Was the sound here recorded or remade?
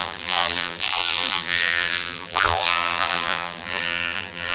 remade